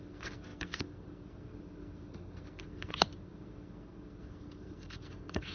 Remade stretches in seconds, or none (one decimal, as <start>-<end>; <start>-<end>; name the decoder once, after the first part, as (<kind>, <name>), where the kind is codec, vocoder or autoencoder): 0.0-5.5 (codec, SNAC)